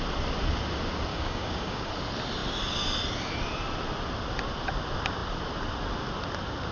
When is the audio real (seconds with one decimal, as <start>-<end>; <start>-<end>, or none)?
0.0-1.1; 1.9-6.7